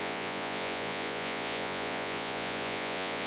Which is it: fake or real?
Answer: fake